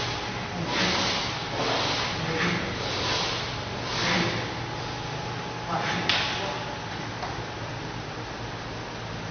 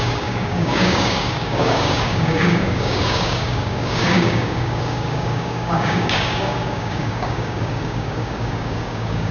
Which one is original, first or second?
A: first